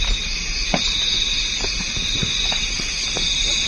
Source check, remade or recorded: recorded